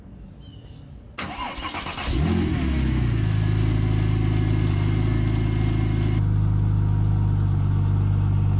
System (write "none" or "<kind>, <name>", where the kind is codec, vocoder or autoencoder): none